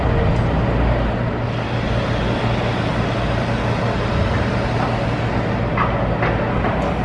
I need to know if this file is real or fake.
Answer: real